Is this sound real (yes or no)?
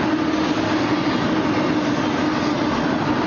yes